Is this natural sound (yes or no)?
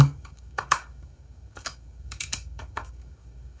no